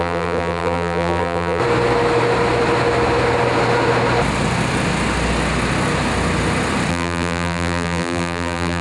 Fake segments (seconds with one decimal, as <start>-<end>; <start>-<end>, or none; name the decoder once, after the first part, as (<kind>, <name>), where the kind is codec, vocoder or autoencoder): 0.0-1.6 (vocoder, BigVGAN v2); 6.9-8.8

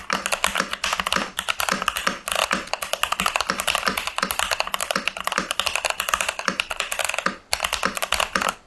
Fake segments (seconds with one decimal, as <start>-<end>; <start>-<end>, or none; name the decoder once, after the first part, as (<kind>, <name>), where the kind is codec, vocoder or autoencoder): 0.7-1.8 (vocoder, BigVGAN v2); 4.8-6.4

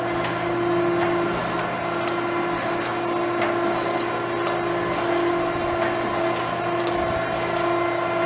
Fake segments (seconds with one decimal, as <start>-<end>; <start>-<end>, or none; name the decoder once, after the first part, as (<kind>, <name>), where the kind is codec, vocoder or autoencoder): none

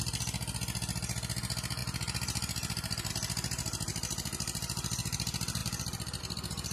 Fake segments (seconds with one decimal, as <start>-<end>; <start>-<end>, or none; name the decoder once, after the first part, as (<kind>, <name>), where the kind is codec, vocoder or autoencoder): 3.9-5.0 (vocoder, BigVGAN v2); 5.6-6.2

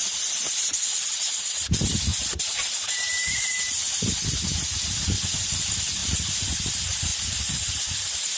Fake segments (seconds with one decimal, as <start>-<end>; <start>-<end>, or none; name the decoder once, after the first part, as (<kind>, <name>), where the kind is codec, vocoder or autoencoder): 2.1-3.4 (vocoder, BigVGAN v2); 6.0-6.6

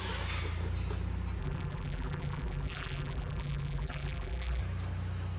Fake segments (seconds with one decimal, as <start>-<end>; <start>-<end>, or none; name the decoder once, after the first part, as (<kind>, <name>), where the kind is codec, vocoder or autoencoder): 1.4-4.6 (vocoder, BigVGAN v2)